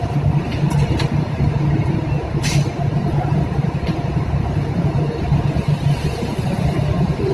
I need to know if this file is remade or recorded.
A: recorded